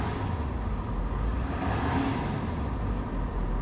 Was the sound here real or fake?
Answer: real